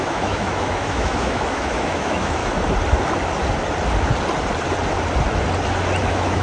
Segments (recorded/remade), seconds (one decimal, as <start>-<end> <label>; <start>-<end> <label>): 0.0-2.4 remade; 2.4-6.0 recorded; 6.0-6.4 remade